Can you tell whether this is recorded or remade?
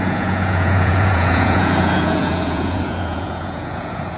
remade